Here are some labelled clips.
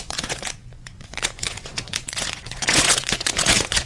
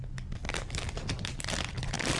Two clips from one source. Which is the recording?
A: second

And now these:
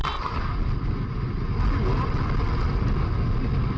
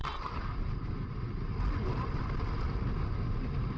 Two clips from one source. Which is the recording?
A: first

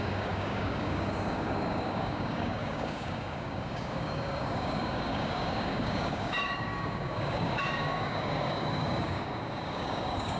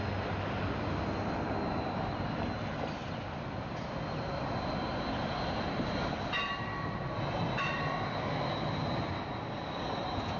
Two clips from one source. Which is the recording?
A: second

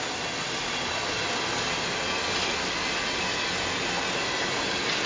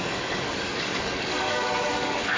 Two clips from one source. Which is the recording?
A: first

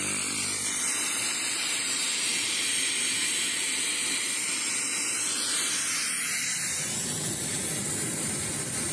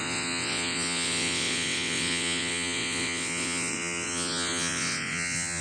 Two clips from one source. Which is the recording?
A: first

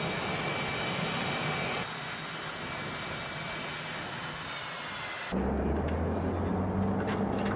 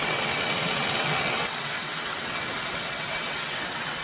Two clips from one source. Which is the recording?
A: first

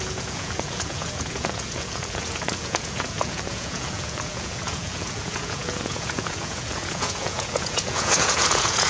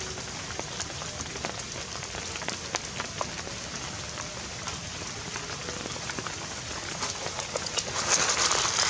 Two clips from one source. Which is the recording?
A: second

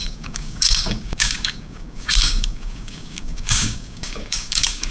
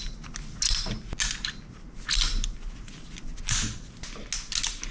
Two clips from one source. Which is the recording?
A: second